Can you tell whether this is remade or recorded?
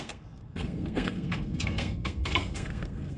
remade